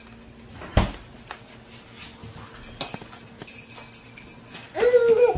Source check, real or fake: real